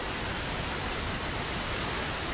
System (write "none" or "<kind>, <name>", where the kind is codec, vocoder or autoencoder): none